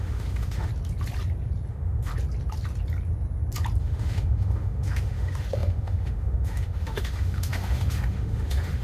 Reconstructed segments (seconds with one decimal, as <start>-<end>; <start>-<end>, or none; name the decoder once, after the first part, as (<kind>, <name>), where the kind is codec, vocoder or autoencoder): 0.0-0.7 (autoencoder, DAC-VAE); 1.7-2.1; 3.8-8.8